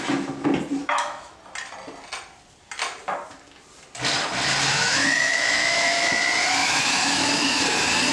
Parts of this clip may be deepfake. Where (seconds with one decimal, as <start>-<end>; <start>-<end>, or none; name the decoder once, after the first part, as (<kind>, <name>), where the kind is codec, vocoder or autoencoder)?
0.8-1.4 (autoencoder, DAC-VAE); 4.7-6.1; 6.6-7.6